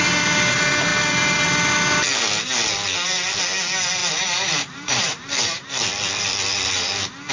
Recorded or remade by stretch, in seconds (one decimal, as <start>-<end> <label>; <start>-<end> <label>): 0.0-4.0 recorded; 4.0-7.3 remade